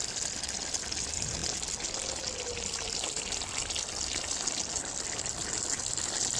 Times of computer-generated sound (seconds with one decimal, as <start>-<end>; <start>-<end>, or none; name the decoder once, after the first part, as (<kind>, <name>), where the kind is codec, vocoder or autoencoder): none

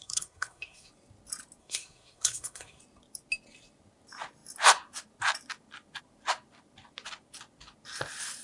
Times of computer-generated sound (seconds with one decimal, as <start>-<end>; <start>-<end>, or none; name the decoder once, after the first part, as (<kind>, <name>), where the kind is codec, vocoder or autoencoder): 0.0-0.9 (codec, SNAC); 1.6-2.8

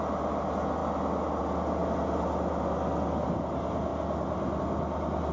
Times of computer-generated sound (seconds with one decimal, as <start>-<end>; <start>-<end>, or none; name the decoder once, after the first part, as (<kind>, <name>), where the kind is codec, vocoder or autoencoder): none

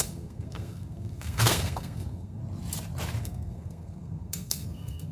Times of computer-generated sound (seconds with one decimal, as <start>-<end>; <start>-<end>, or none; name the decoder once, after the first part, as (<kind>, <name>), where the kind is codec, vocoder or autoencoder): 0.0-2.4 (codec, SNAC); 3.2-5.1

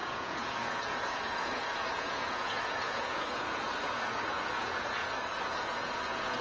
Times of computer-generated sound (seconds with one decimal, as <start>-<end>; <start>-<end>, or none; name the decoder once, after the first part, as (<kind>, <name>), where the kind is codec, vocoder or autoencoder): 0.0-6.4 (vocoder, Vocos)